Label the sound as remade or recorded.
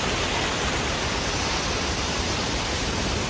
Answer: recorded